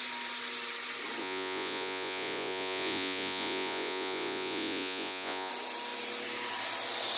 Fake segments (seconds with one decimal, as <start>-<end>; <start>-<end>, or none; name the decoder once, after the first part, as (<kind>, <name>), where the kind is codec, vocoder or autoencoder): 1.2-5.5 (vocoder, Vocos)